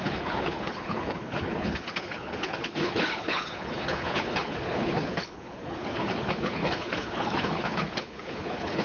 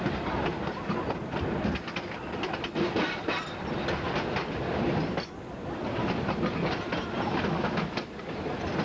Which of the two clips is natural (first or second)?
second